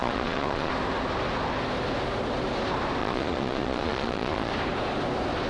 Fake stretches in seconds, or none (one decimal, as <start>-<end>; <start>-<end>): 0.0-0.7; 3.0-4.5